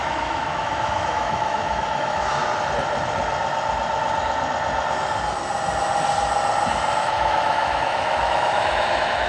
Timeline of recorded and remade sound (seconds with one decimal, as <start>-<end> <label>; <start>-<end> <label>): 0.0-2.4 remade; 2.4-7.0 recorded; 7.0-9.3 remade